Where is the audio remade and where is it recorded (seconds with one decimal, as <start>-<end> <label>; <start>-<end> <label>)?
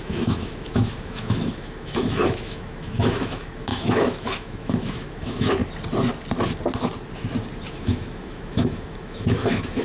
0.0-5.6 remade; 5.6-7.7 recorded; 7.7-9.8 remade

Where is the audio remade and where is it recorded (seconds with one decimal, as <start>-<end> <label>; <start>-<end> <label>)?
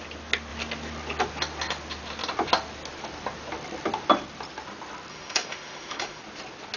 0.0-5.1 recorded; 5.1-6.2 remade; 6.2-6.8 recorded